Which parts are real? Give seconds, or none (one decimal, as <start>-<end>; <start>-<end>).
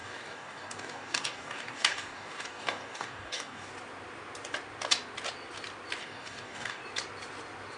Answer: 3.7-6.0; 6.8-7.8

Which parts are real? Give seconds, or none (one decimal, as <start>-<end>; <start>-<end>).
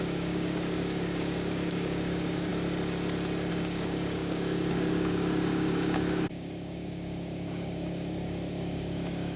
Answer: 2.5-3.5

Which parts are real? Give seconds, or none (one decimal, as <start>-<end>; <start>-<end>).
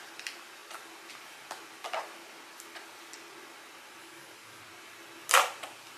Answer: 0.0-4.0; 4.6-6.0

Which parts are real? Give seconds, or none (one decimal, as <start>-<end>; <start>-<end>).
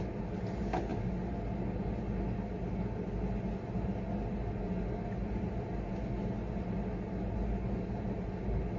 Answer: 0.0-8.8